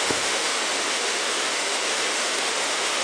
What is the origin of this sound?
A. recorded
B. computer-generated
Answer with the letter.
B